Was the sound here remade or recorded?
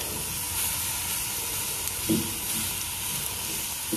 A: recorded